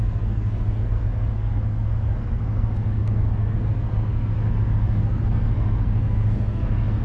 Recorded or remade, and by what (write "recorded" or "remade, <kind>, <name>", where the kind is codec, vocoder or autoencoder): remade, codec, SNAC